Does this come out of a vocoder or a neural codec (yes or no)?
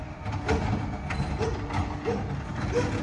no